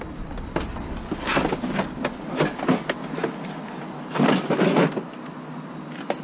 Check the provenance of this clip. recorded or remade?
recorded